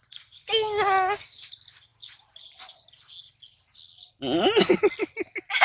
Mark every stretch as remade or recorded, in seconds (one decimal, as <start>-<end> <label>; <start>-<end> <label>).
0.0-5.6 recorded